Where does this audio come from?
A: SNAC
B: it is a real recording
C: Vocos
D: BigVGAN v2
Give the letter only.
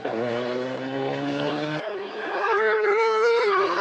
A